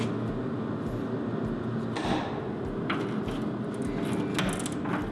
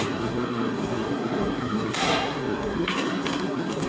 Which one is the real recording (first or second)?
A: first